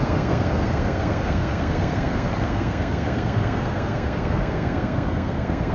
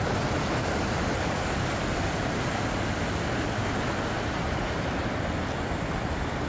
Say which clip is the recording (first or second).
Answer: second